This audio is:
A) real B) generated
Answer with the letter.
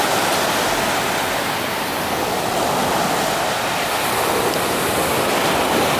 A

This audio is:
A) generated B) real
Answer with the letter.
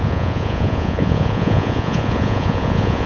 A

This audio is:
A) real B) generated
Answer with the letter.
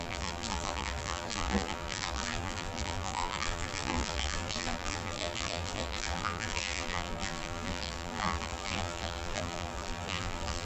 B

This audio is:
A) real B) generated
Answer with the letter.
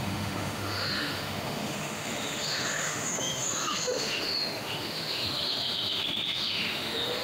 B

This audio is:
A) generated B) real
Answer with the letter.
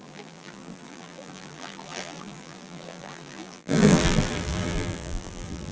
A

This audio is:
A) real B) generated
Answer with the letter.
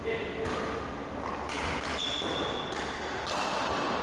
A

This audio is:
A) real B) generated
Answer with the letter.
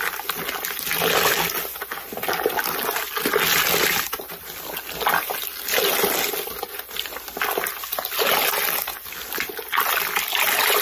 A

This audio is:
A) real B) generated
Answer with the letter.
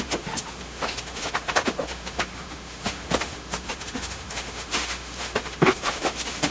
B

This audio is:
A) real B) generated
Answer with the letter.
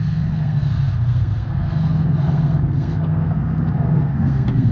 B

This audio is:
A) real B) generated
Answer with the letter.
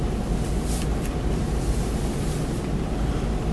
A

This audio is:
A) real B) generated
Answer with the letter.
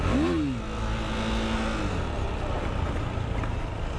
A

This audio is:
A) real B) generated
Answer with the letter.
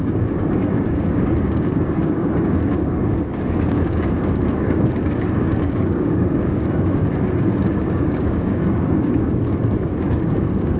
B